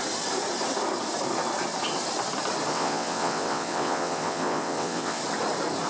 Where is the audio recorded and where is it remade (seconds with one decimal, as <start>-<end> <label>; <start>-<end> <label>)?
0.0-2.7 recorded; 2.7-5.2 remade; 5.2-5.9 recorded